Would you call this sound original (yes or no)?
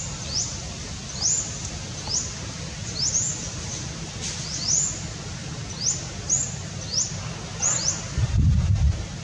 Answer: yes